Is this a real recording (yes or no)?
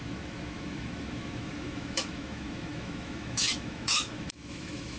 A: no